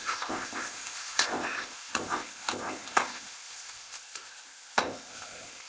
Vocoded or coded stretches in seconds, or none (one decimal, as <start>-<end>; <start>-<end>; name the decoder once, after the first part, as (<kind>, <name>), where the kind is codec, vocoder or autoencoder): 0.0-5.7 (codec, ZipCodec)